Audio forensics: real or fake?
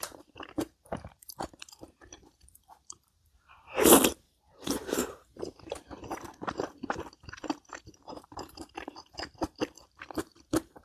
fake